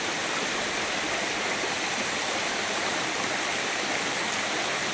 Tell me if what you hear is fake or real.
real